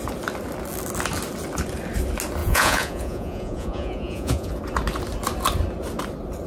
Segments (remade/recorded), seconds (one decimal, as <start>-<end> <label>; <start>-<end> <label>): 0.0-2.4 recorded; 2.4-4.5 remade; 4.5-6.5 recorded